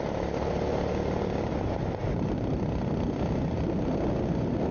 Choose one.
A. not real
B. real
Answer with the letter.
B